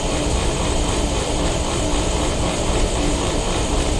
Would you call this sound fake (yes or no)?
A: yes